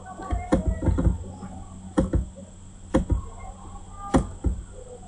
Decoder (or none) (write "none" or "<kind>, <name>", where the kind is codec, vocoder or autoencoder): none